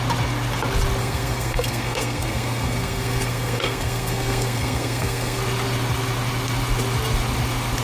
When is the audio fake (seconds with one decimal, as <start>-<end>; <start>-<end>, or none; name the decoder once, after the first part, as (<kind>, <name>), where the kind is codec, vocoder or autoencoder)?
1.0-5.4 (codec, SNAC)